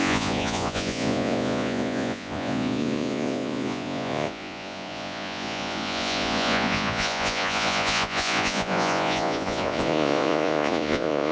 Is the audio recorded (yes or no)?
no